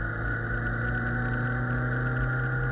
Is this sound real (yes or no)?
yes